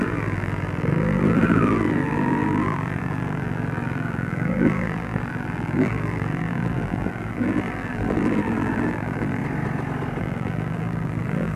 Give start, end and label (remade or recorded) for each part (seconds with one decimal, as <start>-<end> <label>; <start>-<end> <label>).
0.0-9.4 remade; 9.4-10.2 recorded; 10.2-11.6 remade